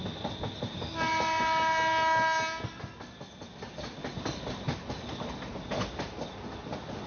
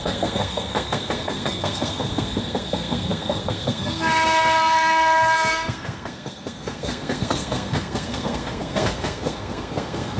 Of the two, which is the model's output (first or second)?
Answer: second